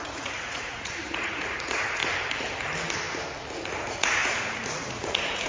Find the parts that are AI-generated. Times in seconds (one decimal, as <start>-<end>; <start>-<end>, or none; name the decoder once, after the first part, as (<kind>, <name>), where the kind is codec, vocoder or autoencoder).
0.0-2.0 (vocoder, Vocos); 3.8-5.5